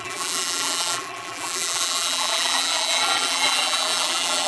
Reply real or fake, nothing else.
fake